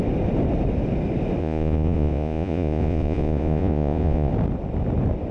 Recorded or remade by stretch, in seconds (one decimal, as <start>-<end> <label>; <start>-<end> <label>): 0.0-1.4 recorded; 1.4-4.3 remade; 4.3-5.3 recorded